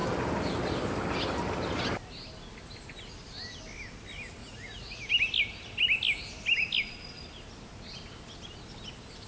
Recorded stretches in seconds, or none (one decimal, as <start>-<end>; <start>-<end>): 0.0-4.4; 5.0-9.3